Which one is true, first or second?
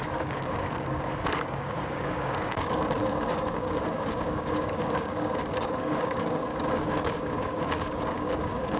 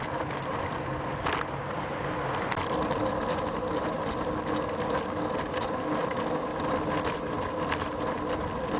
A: second